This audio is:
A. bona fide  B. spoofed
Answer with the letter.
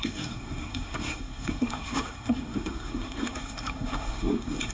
B